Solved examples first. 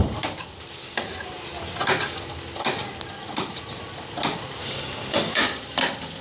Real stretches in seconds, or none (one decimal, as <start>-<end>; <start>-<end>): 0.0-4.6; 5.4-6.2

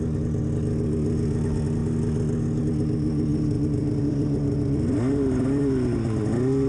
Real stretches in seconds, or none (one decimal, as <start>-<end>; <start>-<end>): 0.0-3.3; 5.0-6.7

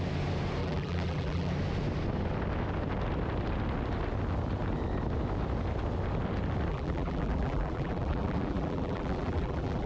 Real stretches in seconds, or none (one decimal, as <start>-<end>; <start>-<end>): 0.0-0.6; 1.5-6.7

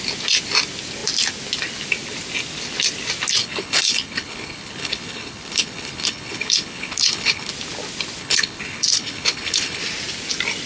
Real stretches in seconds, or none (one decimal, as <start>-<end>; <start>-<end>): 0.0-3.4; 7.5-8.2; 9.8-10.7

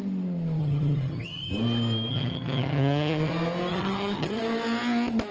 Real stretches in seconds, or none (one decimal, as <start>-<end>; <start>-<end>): 0.0-0.6; 1.5-2.1; 3.3-3.7; 4.4-5.3